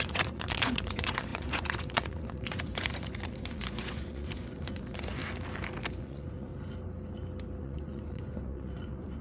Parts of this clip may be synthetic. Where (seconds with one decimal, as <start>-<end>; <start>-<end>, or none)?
0.0-5.2; 6.0-6.5; 7.6-9.2